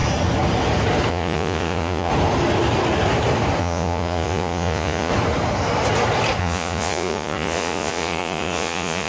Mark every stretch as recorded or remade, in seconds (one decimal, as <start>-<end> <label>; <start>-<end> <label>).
0.0-1.1 recorded; 1.1-2.1 remade; 2.1-3.6 recorded; 3.6-5.1 remade; 5.1-6.4 recorded; 6.4-9.1 remade